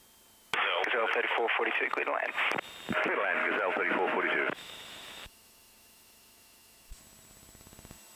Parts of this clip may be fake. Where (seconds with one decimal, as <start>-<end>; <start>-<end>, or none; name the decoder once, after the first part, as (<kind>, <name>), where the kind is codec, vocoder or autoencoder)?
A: 3.4-7.0 (autoencoder, DAC-VAE)